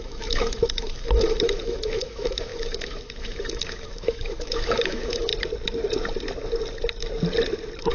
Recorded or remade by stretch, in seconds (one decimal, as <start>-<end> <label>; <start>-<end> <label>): 0.0-5.3 remade; 5.3-7.9 recorded